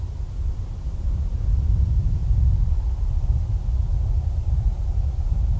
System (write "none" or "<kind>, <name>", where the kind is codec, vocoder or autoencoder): none